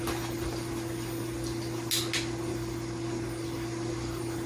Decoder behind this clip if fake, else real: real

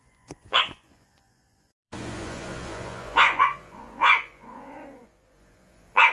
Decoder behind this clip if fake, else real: fake, vocoder, Vocos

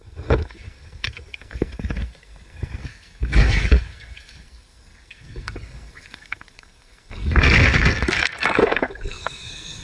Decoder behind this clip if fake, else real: fake, codec, SNAC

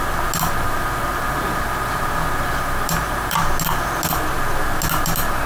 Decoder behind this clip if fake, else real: real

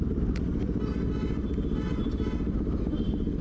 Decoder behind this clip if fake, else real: real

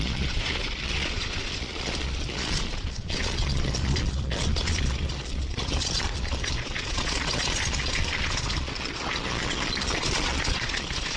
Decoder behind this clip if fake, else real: fake, vocoder, Vocos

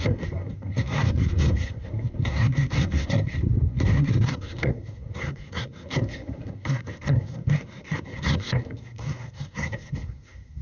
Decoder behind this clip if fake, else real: fake, codec, SNAC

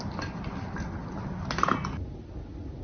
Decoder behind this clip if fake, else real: real